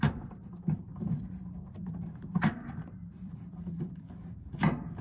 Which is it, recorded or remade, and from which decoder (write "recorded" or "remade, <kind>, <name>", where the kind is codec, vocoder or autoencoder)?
remade, vocoder, BigVGAN v2